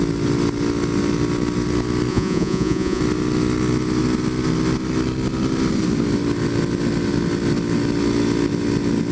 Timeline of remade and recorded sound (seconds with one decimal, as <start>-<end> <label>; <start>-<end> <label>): 0.0-2.1 recorded; 2.1-3.0 remade; 3.0-9.1 recorded